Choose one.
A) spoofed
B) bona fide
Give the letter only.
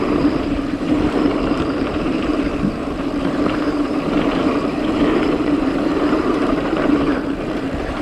A